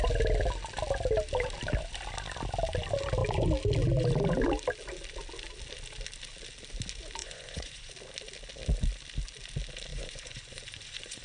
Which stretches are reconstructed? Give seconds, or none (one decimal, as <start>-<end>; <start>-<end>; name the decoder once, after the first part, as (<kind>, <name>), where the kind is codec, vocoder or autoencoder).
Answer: 7.2-7.9 (vocoder, Vocos); 9.9-11.2